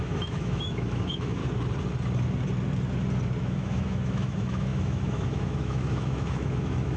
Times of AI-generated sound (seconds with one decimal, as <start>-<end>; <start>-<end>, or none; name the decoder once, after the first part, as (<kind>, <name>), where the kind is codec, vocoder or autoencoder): 0.0-1.4 (autoencoder, DAC-VAE); 3.4-7.0